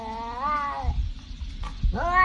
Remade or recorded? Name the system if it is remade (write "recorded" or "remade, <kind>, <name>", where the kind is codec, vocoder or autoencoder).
recorded